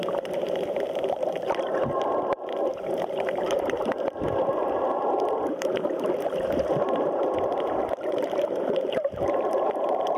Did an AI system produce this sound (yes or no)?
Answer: yes